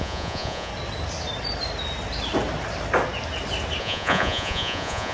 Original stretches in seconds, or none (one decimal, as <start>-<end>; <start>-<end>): 0.7-3.8